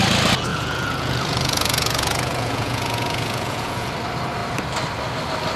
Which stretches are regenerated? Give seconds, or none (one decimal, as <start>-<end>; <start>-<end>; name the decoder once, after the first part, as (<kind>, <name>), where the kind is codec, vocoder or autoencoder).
0.5-3.9 (vocoder, Vocos)